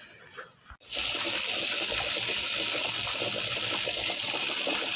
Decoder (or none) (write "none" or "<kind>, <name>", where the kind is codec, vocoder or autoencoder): none